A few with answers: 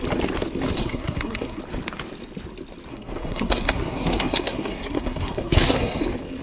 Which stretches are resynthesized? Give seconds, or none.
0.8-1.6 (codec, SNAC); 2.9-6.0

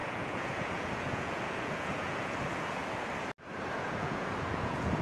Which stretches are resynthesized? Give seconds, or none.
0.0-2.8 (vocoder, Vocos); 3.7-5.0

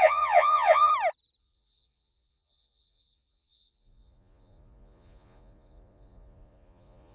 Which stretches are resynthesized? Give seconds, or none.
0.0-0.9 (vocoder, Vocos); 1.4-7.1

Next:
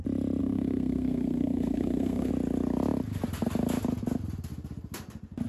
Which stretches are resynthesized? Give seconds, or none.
0.4-2.3 (codec, SNAC)

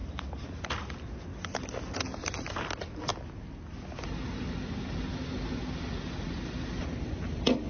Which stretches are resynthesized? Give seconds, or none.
0.0-0.6 (vocoder, BigVGAN v2)

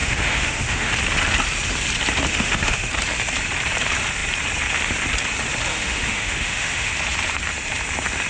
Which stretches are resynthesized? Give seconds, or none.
0.0-0.9 (autoencoder, DAC-VAE); 2.3-2.9; 5.7-6.9